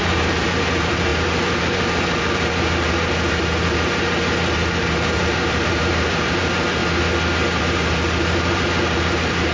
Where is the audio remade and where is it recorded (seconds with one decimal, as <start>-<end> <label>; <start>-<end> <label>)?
0.0-6.8 remade; 6.8-7.6 recorded; 7.6-9.5 remade